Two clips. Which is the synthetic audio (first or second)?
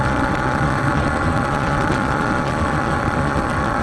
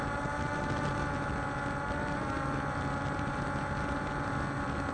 first